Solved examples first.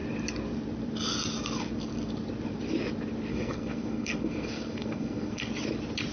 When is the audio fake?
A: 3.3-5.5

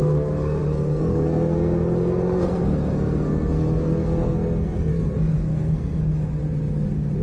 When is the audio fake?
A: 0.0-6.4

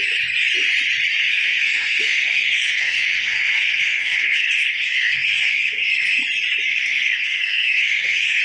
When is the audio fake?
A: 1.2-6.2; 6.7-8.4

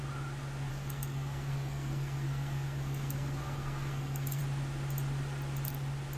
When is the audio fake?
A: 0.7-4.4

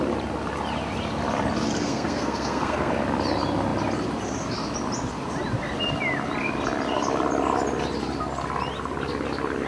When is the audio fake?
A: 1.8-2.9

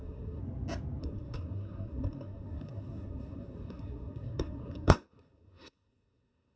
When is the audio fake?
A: 0.0-0.4; 1.0-6.6

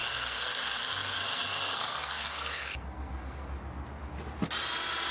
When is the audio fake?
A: 0.0-3.5

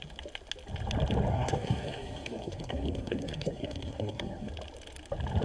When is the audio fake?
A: 1.3-4.5